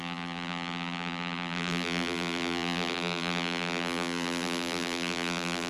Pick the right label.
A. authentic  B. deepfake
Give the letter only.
B